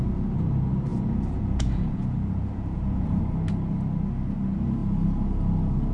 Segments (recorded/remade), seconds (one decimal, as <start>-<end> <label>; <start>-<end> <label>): 0.0-0.9 recorded; 0.9-3.2 remade; 3.2-5.9 recorded